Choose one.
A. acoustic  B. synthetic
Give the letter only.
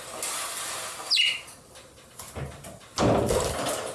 A